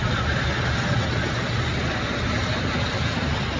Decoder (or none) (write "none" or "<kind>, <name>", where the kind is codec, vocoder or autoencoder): none